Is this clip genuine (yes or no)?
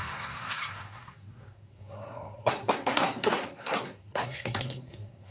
no